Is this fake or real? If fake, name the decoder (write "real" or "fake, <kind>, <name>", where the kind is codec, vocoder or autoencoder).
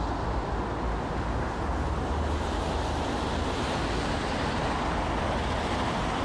real